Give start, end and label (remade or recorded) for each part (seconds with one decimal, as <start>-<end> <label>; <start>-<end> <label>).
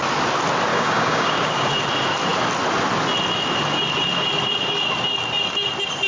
0.0-0.7 recorded; 0.7-1.7 remade; 1.7-6.1 recorded